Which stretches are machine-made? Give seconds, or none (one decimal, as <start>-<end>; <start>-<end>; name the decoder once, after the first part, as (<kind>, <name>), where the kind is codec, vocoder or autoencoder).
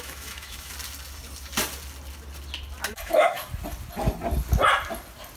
0.0-0.7 (autoencoder, DAC-VAE); 2.9-3.4